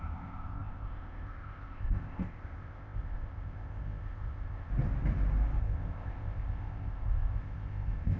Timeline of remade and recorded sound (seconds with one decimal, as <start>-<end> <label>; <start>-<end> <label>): 0.0-4.7 remade; 4.7-5.6 recorded; 5.6-8.2 remade